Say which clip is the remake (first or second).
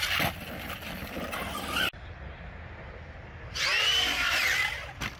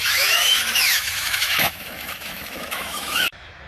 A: second